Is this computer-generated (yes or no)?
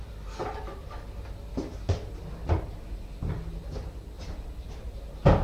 no